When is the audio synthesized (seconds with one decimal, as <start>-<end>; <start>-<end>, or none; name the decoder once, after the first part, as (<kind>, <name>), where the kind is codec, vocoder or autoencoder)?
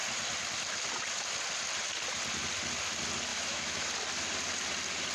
3.3-3.9 (autoencoder, DAC-VAE)